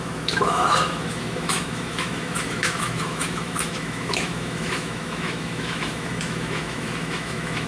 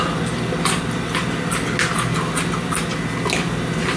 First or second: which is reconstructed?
first